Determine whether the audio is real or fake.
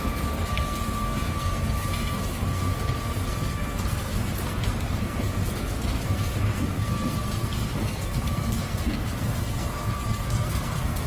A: fake